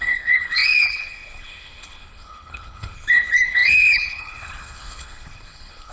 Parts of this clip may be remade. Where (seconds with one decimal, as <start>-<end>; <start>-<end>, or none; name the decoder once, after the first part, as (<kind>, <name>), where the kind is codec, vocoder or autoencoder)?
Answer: 0.0-5.9 (codec, HILCodec)